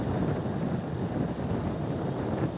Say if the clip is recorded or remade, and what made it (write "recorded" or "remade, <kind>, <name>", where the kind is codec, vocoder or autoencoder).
recorded